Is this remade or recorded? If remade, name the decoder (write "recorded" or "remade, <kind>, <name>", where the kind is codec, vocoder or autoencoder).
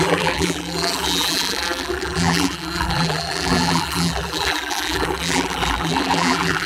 remade, vocoder, BigVGAN v2